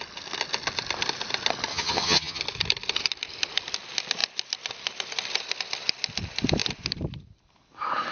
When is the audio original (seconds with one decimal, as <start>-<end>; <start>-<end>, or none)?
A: 0.0-1.7; 2.4-8.1